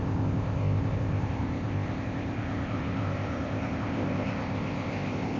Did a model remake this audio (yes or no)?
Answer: yes